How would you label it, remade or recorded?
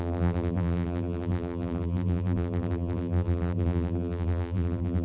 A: remade